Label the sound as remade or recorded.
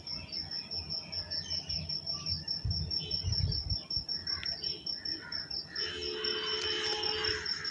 recorded